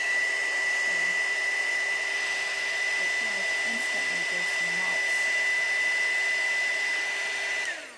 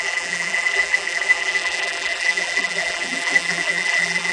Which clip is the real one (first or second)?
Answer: first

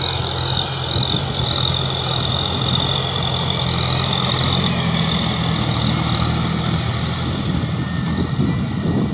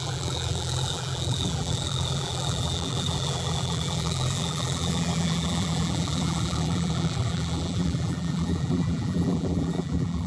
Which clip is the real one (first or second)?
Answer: first